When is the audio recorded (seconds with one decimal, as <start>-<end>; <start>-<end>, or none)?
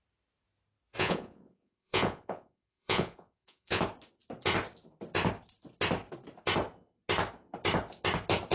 0.0-0.9; 3.8-8.5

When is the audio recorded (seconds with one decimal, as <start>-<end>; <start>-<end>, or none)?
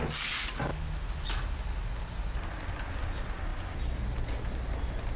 0.0-5.2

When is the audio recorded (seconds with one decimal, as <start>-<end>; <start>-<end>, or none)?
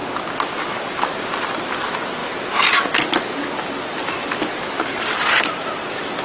0.0-6.2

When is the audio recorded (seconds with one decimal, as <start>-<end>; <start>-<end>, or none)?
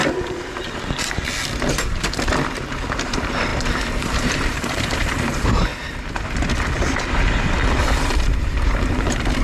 0.0-2.7; 5.7-7.7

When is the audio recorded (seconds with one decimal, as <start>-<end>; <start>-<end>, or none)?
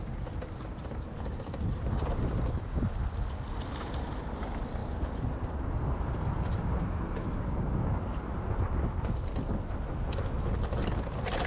0.0-11.5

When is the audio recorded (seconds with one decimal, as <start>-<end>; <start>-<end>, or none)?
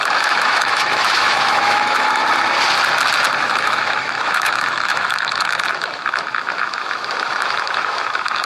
2.2-3.4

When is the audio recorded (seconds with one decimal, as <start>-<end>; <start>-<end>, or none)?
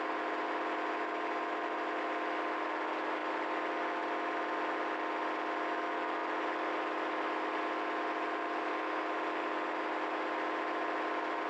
0.0-11.5